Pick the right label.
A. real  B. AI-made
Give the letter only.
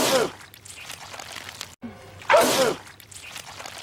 A